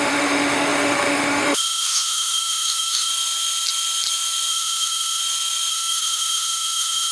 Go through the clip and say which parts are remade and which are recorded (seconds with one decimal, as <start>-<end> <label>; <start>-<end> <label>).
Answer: 0.0-3.1 remade; 3.1-4.5 recorded; 4.5-5.2 remade; 5.2-5.7 recorded; 5.7-7.1 remade

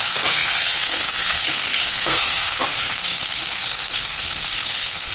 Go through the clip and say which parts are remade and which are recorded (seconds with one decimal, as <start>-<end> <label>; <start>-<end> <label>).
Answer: 0.0-5.1 remade

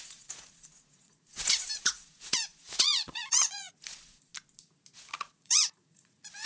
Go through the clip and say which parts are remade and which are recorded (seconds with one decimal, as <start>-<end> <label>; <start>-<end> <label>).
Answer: 0.0-4.3 remade; 4.3-4.9 recorded; 4.9-6.5 remade

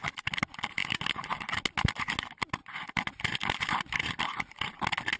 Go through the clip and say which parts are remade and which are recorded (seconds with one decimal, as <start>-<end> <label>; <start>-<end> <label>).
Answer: 0.0-2.6 recorded; 2.6-4.2 remade; 4.2-5.2 recorded

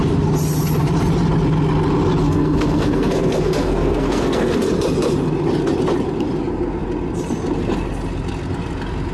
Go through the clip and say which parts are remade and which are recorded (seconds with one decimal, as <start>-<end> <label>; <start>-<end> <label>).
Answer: 0.0-2.2 recorded; 2.2-4.7 remade; 4.7-9.1 recorded

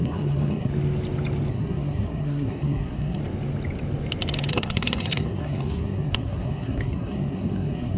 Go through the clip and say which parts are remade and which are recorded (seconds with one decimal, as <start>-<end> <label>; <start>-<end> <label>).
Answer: 0.0-0.7 remade; 0.7-1.5 recorded; 1.5-3.2 remade; 3.2-4.5 recorded; 4.5-8.0 remade

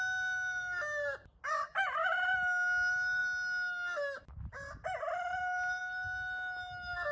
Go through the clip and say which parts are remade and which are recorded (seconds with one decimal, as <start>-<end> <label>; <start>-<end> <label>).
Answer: 0.0-7.1 recorded